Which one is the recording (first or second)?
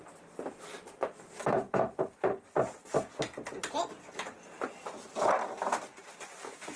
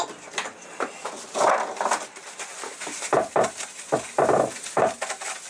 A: second